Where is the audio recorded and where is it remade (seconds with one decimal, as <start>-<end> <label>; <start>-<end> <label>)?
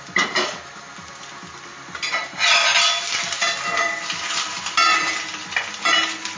0.0-6.4 recorded